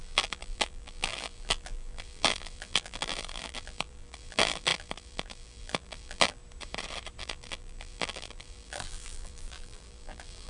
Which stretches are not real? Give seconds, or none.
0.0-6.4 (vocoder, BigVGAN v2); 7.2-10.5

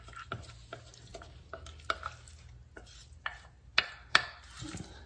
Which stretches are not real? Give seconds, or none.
none